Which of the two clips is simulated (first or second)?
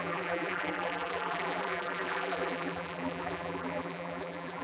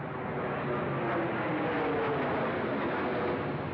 first